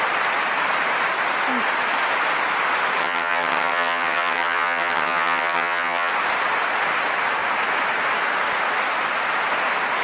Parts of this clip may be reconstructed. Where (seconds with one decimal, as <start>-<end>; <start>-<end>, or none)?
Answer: 3.0-6.1